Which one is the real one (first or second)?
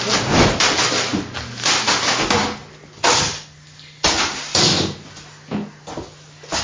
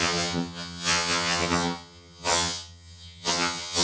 first